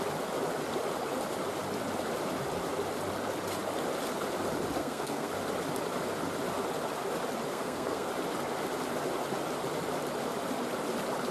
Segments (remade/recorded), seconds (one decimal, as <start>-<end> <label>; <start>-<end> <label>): 0.0-4.8 recorded; 4.8-5.3 remade; 5.3-7.5 recorded; 7.5-8.1 remade; 8.1-11.3 recorded